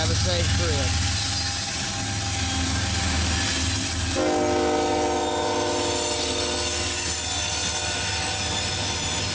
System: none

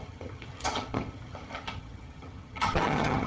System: vocoder, HiFi-GAN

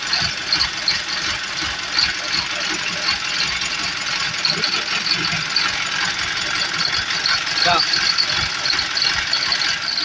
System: none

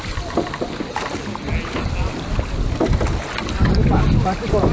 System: none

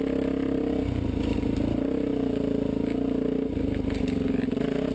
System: none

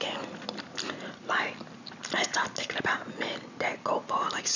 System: none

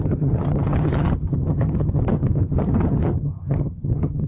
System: vocoder, HiFi-GAN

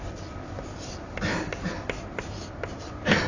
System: none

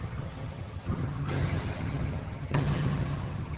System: vocoder, HiFi-GAN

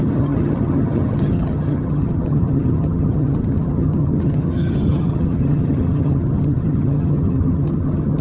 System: vocoder, HiFi-GAN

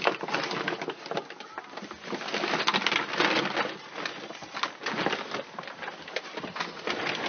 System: none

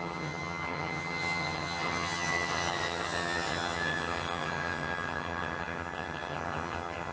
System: vocoder, HiFi-GAN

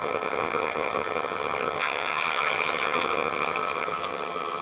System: vocoder, HiFi-GAN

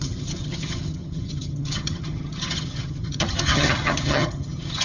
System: vocoder, HiFi-GAN